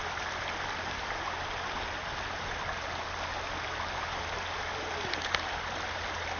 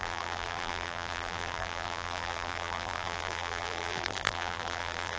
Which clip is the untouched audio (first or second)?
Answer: first